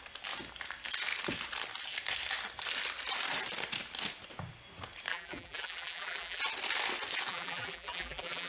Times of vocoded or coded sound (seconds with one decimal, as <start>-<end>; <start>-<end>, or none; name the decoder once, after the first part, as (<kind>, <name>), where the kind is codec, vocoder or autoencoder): 5.1-6.4 (vocoder, BigVGAN v2); 7.3-8.5